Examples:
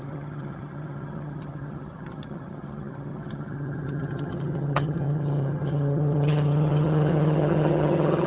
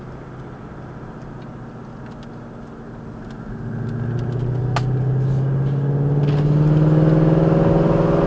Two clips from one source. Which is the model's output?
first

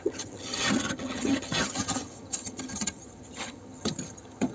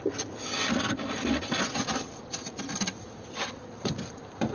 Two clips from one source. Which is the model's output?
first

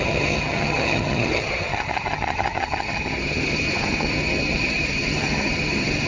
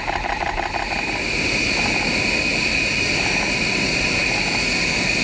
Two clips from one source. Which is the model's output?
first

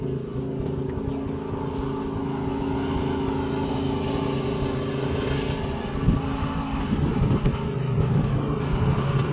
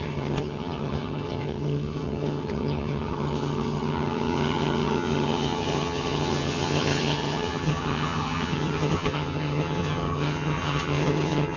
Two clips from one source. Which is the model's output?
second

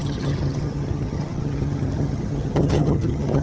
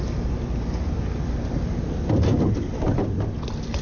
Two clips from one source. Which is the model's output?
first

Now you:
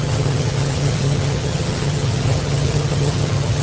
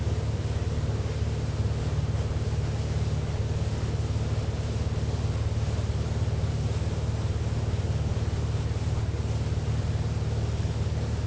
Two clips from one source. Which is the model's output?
first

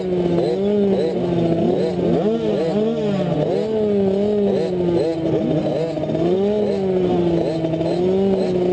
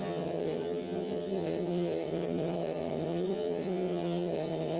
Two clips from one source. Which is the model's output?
second